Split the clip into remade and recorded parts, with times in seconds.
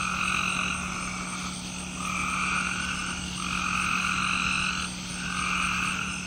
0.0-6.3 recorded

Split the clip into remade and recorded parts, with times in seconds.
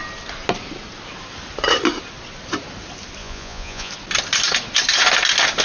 0.0-3.2 recorded; 3.2-3.9 remade; 3.9-5.6 recorded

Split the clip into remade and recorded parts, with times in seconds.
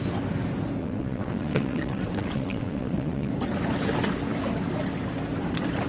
0.0-0.8 recorded; 0.8-3.3 remade; 3.3-5.9 recorded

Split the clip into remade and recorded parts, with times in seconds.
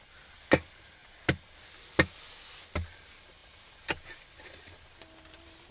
0.0-5.7 recorded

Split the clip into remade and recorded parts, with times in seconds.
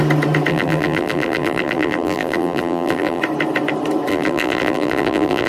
0.0-0.5 recorded; 0.5-3.2 remade; 3.2-4.1 recorded; 4.1-5.5 remade